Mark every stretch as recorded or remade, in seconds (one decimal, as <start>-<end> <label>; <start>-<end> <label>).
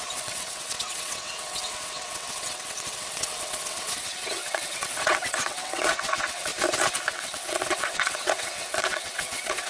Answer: 0.0-6.5 remade; 6.5-7.1 recorded; 7.1-9.7 remade